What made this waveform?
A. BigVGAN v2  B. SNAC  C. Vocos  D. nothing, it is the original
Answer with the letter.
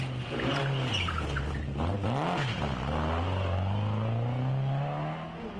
D